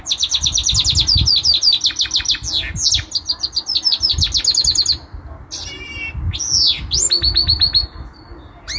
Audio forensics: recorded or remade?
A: recorded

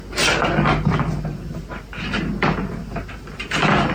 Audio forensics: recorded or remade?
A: recorded